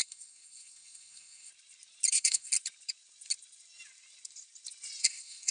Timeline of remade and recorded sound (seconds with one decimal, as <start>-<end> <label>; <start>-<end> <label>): 0.0-1.5 remade; 1.5-2.1 recorded; 2.1-2.5 remade; 2.5-5.0 recorded; 5.0-5.5 remade